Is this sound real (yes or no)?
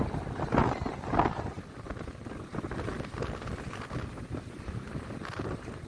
yes